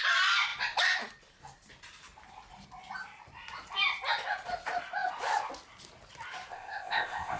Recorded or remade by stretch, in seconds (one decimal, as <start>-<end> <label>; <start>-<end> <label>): 0.0-6.5 recorded; 6.5-7.4 remade